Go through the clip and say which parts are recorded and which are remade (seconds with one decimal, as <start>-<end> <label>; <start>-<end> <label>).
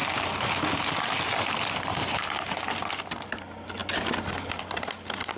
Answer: 0.0-5.4 recorded